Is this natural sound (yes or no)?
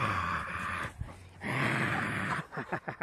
yes